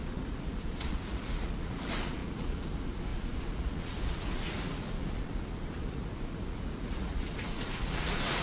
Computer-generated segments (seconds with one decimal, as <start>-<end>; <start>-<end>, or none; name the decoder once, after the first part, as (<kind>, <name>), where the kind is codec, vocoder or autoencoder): 0.0-8.4 (vocoder, Vocos)